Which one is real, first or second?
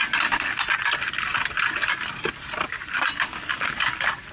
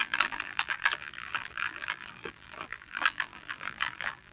first